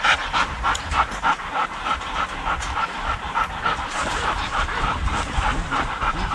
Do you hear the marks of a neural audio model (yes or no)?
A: yes